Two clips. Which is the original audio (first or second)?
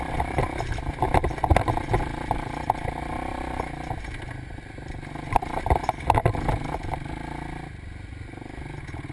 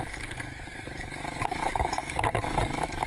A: first